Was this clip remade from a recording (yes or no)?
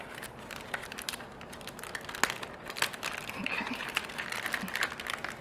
no